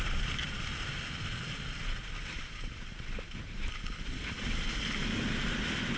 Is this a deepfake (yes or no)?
no